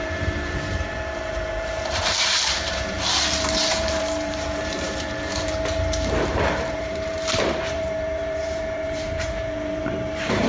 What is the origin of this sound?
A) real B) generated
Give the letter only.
B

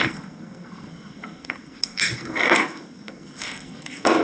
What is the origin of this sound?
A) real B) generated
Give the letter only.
B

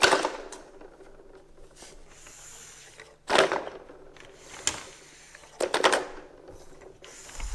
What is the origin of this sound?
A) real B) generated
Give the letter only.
A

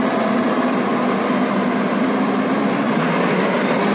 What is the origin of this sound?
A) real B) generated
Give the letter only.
B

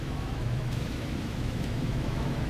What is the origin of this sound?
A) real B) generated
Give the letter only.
B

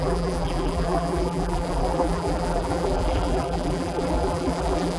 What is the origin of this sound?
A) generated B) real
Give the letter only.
A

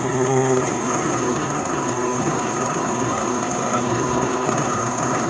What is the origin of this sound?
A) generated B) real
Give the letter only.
A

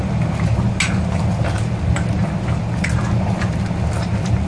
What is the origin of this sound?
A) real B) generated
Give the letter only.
A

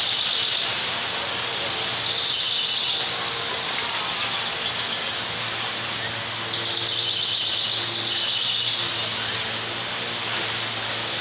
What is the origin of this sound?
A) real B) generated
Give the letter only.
A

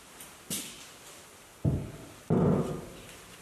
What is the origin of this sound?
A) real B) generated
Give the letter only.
A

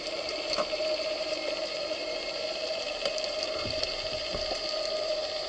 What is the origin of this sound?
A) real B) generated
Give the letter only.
B